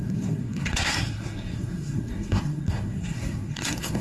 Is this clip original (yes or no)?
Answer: no